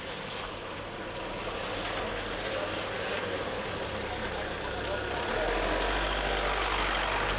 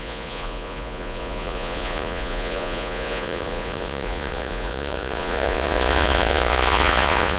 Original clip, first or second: first